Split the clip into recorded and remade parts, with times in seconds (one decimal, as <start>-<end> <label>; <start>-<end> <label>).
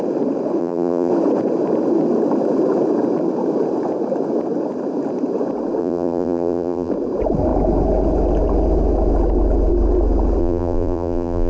0.0-0.6 recorded; 0.6-1.1 remade; 1.1-5.8 recorded; 5.8-6.9 remade; 6.9-10.4 recorded; 10.4-11.5 remade